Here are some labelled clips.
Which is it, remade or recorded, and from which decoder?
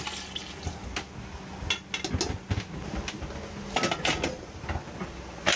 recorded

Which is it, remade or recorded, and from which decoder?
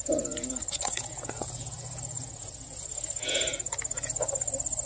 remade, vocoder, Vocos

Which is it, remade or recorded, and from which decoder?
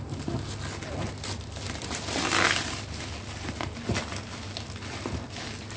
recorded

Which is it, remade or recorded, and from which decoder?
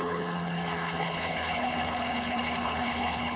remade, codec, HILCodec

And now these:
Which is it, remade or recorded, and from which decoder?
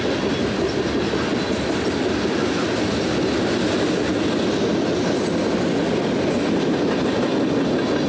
recorded